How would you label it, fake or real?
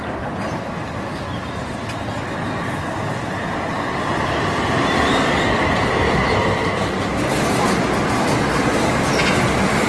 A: real